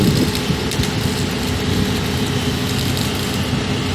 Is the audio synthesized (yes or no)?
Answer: no